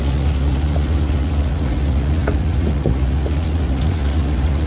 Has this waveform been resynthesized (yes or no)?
yes